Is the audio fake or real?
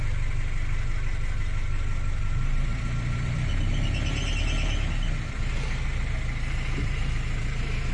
real